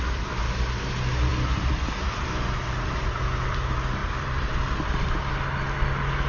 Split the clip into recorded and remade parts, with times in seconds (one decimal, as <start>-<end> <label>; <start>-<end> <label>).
0.0-4.0 recorded; 4.0-4.6 remade; 4.6-6.3 recorded